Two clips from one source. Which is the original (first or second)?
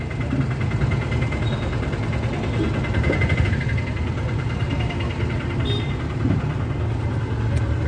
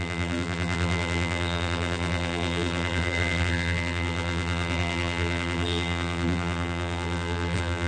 first